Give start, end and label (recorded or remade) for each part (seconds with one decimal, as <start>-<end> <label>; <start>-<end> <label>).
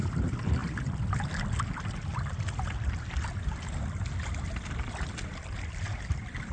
0.0-6.5 recorded